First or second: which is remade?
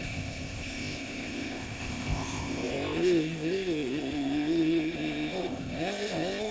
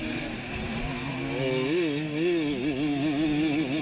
first